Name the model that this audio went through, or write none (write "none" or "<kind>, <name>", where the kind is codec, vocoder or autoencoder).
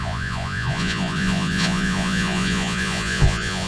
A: vocoder, Vocos